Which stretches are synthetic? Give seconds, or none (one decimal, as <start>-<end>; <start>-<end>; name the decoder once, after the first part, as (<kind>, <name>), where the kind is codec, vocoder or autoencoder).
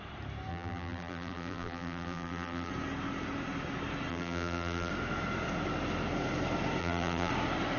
0.5-2.7 (vocoder, BigVGAN v2); 4.1-4.9; 6.8-7.3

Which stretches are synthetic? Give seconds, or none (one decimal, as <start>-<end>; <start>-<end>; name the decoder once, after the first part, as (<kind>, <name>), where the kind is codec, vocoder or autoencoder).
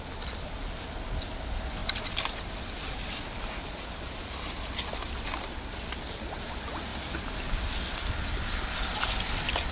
none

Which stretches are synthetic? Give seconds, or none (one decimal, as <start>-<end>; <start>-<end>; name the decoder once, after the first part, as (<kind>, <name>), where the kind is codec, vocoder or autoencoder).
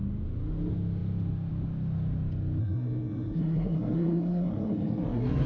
2.6-5.5 (codec, SNAC)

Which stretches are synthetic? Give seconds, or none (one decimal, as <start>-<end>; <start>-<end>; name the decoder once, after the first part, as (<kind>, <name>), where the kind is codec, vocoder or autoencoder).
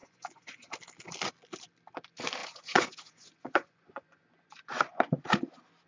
0.0-0.7 (vocoder, Vocos); 2.4-4.7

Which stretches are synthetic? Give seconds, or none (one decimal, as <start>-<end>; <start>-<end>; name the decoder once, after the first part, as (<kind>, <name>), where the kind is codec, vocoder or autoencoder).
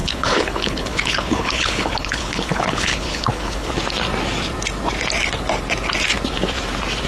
0.0-3.7 (codec, HILCodec)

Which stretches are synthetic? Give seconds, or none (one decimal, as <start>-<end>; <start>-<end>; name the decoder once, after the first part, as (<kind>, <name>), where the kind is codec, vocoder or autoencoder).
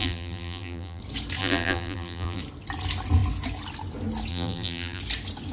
0.0-1.0 (vocoder, BigVGAN v2); 1.4-2.4; 4.3-5.0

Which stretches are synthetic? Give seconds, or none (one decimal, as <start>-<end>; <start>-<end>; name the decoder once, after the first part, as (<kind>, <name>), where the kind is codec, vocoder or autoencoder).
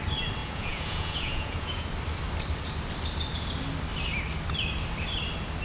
0.4-1.9 (vocoder, Vocos)